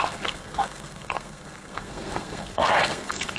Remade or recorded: remade